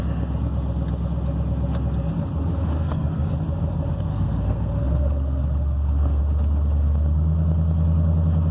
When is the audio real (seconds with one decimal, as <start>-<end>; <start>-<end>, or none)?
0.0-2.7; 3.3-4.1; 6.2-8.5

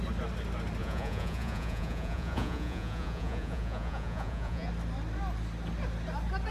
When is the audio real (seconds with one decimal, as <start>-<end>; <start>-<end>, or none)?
0.0-0.8; 4.7-6.5

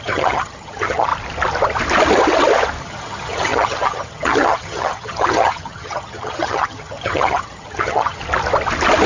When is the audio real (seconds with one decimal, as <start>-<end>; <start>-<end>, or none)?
1.1-2.8; 8.2-9.1

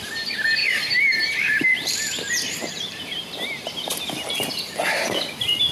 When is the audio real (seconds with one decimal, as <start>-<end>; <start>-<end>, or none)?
0.0-0.6; 4.0-5.7

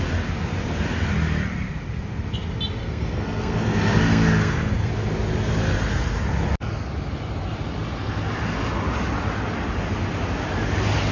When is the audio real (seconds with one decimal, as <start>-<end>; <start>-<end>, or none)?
0.0-2.8; 4.9-11.1

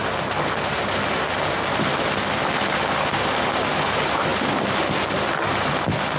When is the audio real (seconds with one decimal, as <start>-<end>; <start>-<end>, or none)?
0.0-6.2